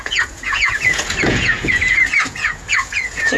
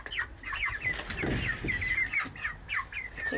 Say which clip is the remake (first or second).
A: first